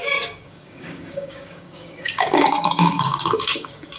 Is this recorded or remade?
remade